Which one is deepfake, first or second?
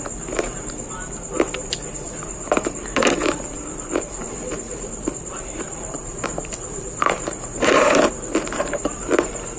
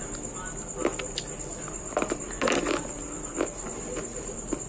first